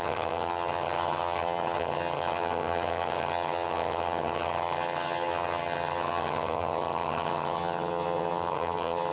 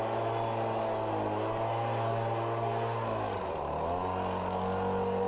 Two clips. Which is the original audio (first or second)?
second